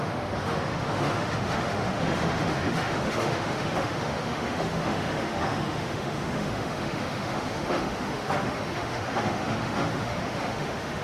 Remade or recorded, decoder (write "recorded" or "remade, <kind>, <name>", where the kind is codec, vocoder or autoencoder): remade, autoencoder, DAC-VAE